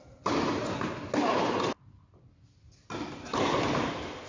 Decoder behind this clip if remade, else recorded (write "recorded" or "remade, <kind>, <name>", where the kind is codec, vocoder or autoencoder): recorded